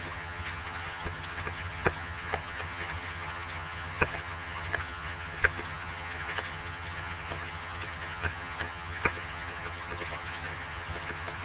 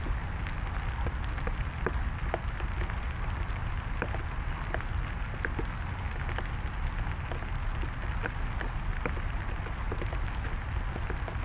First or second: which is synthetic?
first